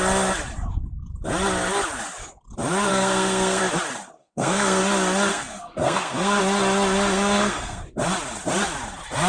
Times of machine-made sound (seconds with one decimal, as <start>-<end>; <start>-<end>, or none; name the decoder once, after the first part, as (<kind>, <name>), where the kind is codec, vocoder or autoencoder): 2.9-3.6 (codec, SNAC); 4.2-4.8; 5.3-6.4; 7.1-7.8